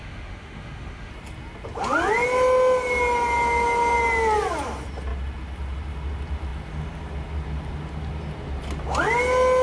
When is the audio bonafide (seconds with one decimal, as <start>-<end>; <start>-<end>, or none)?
1.1-9.6